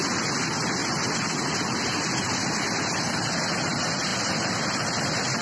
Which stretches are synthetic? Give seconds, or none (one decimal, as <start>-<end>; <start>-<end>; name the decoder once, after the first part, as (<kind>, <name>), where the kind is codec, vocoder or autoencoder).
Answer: none

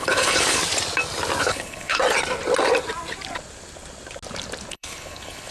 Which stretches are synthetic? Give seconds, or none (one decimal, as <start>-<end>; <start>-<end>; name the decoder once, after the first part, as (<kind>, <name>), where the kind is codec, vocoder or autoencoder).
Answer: 0.0-0.6 (codec, HILCodec); 1.4-2.0; 4.7-5.5

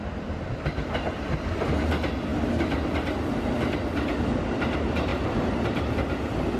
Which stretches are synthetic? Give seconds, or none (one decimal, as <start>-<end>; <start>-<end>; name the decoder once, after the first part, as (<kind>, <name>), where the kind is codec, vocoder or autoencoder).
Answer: 5.1-5.8 (vocoder, BigVGAN v2)

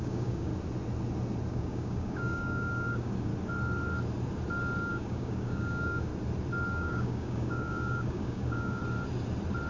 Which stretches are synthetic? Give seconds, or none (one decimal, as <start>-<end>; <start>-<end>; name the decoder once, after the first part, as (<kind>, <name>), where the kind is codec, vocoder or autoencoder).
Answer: 0.0-0.5 (codec, DAC); 1.5-3.3; 4.8-6.1; 6.7-8.8